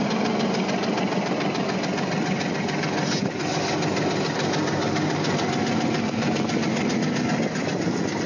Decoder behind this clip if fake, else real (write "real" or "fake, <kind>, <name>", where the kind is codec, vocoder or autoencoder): real